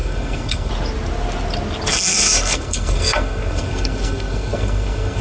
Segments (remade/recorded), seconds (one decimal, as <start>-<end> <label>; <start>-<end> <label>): 0.0-0.7 remade; 0.7-1.9 recorded; 1.9-5.2 remade